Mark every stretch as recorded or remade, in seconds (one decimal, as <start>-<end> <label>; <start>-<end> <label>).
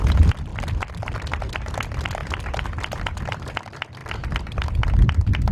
0.0-5.5 recorded